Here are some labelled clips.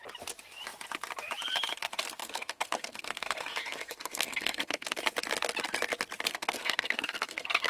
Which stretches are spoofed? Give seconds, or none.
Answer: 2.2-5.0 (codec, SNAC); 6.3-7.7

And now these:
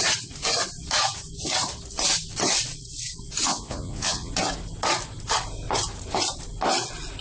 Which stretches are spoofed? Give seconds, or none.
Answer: 3.5-4.3 (vocoder, Vocos)

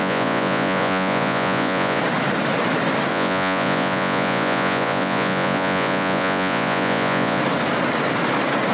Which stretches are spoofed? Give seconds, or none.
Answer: 0.0-2.0 (vocoder, Vocos); 3.1-7.4

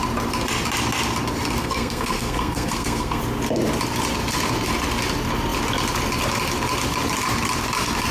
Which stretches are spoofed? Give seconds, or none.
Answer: 1.6-3.2 (codec, SNAC)